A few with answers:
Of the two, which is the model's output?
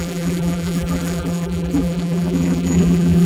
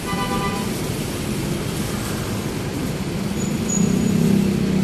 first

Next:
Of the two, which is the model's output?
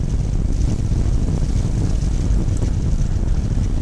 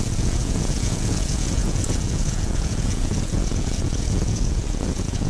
second